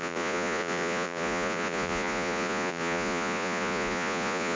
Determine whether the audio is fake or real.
fake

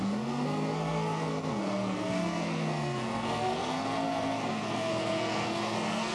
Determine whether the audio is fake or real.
fake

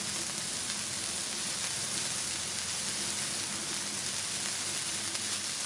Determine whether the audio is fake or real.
real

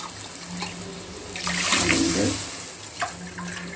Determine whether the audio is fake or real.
real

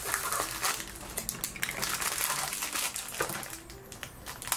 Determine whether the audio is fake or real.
real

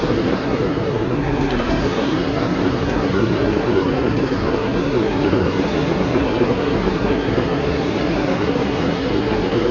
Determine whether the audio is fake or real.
fake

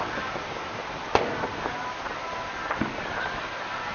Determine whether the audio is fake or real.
real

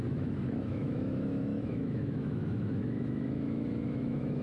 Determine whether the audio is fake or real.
fake